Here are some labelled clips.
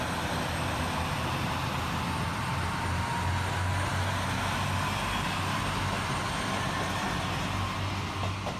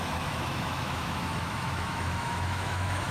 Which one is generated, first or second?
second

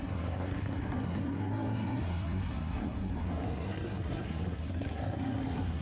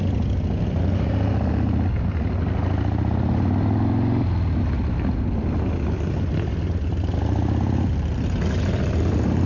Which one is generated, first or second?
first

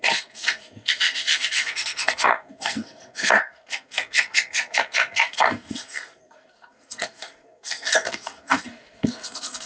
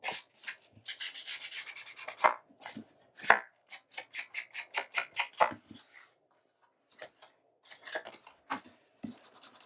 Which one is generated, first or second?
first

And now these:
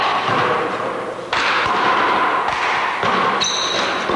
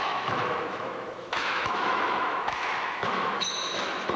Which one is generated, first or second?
second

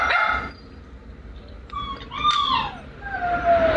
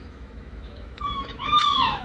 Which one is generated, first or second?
second